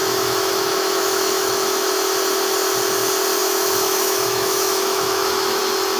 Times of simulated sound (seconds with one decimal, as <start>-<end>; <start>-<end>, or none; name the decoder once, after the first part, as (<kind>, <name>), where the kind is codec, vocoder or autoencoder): 0.0-1.9 (autoencoder, DAC-VAE); 3.4-5.6